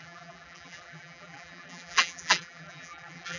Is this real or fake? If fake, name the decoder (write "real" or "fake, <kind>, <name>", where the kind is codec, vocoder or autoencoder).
fake, vocoder, BigVGAN v2